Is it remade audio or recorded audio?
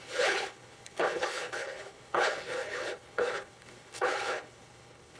remade